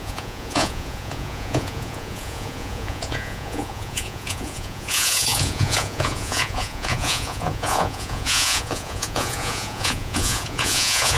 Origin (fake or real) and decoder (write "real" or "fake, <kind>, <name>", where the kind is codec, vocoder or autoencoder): fake, vocoder, Vocos